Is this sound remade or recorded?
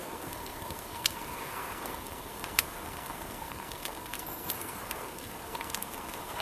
remade